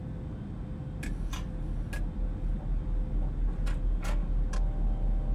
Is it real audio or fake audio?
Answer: real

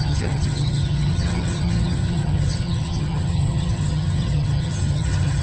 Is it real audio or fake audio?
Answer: fake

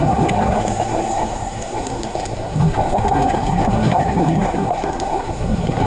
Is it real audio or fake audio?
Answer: fake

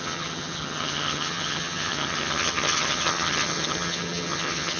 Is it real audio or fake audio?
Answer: fake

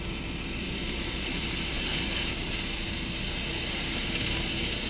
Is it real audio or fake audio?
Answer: real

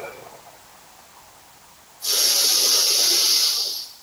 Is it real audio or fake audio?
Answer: real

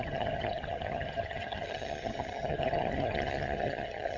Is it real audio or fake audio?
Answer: fake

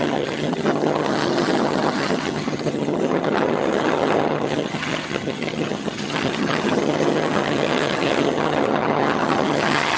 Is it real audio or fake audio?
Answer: fake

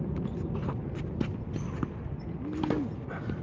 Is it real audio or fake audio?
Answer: real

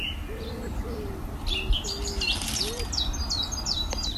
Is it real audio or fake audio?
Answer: real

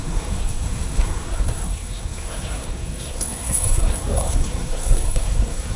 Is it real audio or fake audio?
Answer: fake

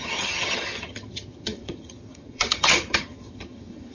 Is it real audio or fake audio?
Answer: fake